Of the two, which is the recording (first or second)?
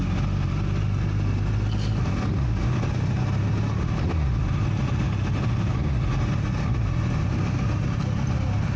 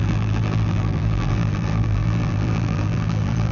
first